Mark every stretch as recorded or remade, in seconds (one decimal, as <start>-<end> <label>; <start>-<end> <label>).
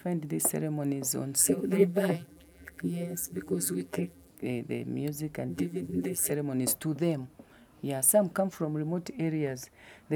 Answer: 0.0-1.4 recorded; 1.4-4.3 remade; 4.3-5.5 recorded; 5.5-6.3 remade; 6.3-10.2 recorded